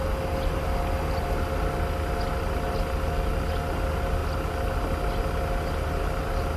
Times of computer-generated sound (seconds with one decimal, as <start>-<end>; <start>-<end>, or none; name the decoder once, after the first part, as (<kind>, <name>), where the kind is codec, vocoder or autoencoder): none